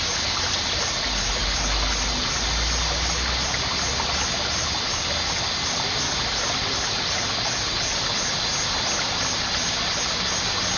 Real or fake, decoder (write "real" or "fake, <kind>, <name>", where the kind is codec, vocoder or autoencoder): real